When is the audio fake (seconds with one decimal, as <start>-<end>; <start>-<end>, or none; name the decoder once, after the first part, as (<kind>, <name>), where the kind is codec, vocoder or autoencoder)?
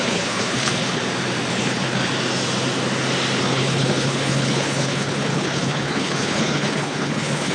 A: 0.0-1.0 (codec, HILCodec); 1.5-2.1; 3.4-7.5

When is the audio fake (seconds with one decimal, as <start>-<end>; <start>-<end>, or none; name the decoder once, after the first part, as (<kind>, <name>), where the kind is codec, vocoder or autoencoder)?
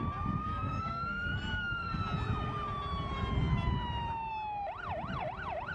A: 0.4-2.0 (codec, SNAC)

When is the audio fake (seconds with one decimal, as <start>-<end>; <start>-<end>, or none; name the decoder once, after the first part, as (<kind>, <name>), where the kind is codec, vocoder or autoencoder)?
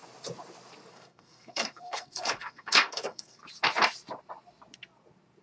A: 0.9-3.4 (codec, SNAC)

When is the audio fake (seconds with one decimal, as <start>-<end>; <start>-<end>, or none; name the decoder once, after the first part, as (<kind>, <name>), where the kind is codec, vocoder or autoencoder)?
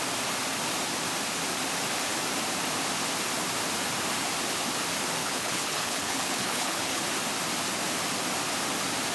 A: 5.2-7.0 (codec, HILCodec)